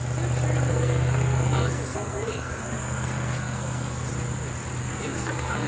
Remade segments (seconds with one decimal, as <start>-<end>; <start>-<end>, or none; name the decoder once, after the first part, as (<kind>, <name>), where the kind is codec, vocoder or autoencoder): 0.7-4.1 (codec, SNAC); 4.8-5.7